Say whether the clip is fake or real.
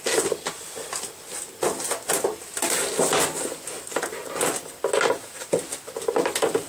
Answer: real